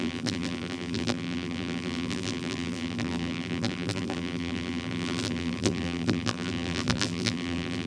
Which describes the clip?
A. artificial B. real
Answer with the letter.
A